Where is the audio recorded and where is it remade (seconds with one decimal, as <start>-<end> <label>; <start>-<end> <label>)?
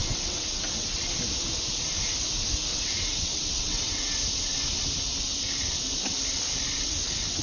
0.0-1.0 remade; 1.0-2.7 recorded; 2.7-4.1 remade; 4.1-7.4 recorded